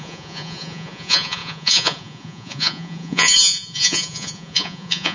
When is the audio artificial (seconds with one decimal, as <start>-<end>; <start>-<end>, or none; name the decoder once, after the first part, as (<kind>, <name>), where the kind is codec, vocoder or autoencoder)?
0.0-5.1 (vocoder, Vocos)

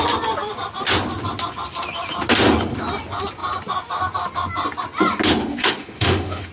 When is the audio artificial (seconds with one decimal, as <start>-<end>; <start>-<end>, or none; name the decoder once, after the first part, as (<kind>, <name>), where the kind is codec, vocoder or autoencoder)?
5.4-6.5 (autoencoder, DAC-VAE)

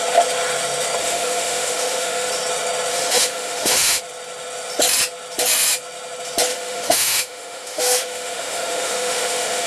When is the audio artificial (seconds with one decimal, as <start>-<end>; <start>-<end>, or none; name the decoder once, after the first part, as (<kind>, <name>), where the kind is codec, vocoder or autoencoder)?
1.0-2.3 (autoencoder, DAC-VAE); 2.9-4.0; 6.5-9.7

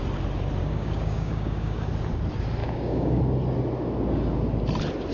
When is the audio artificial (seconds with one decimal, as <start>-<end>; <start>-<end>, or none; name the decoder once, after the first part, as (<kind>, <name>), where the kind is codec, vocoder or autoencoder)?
0.6-1.9 (codec, DAC); 2.6-3.2

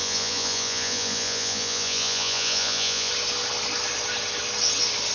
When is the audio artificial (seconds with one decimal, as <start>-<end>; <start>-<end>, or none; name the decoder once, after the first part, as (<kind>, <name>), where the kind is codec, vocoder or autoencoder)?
0.0-3.1 (vocoder, Vocos)

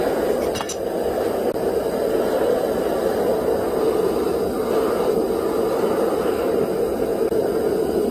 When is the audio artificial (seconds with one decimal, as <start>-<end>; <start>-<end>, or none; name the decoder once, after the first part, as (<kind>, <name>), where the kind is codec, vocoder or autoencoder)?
none